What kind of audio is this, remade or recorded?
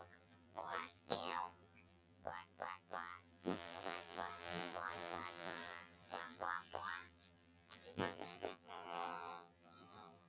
remade